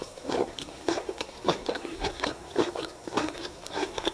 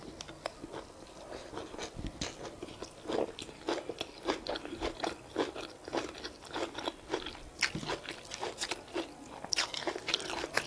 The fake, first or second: first